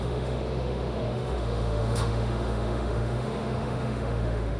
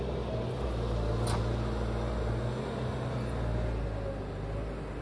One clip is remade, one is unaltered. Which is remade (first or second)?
first